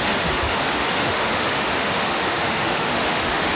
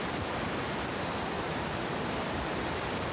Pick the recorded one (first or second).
second